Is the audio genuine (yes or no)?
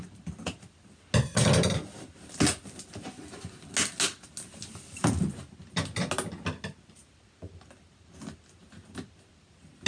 yes